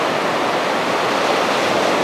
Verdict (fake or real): real